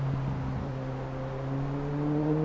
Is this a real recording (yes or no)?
yes